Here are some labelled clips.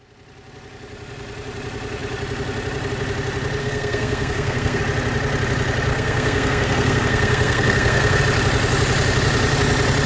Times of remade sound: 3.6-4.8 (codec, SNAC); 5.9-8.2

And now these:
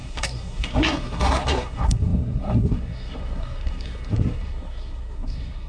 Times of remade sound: 0.0-5.7 (codec, SNAC)